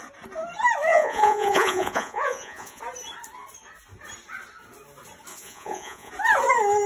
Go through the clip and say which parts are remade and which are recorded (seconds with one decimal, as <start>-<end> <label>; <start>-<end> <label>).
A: 0.0-0.9 recorded; 0.9-2.8 remade; 2.8-5.3 recorded; 5.3-6.1 remade; 6.1-6.9 recorded